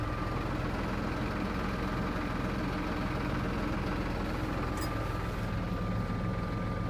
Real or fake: real